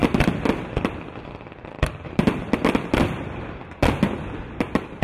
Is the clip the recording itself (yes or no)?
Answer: no